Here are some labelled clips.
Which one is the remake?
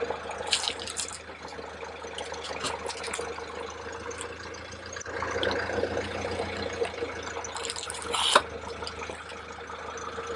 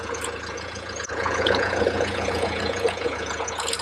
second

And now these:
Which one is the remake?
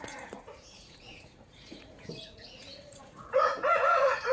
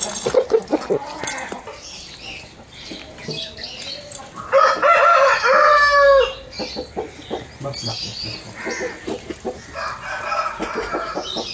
first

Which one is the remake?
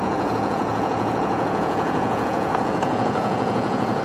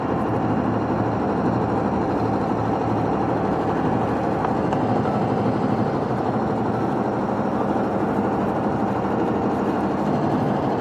first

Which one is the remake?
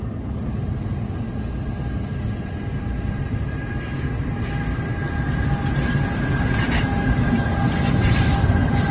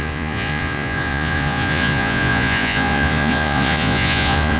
second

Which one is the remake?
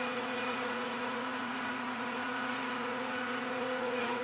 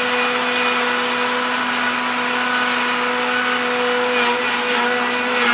first